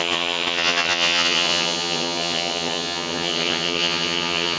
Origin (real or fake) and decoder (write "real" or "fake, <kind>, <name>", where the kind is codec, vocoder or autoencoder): fake, vocoder, HiFi-GAN